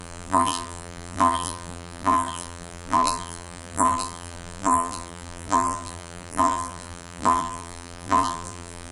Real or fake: fake